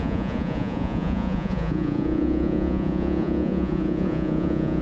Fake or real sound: fake